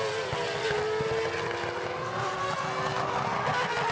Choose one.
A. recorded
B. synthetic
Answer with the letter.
A